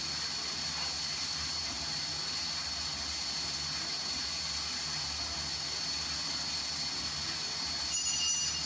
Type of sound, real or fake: real